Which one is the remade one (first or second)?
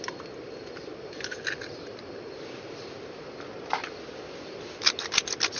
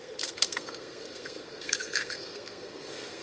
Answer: second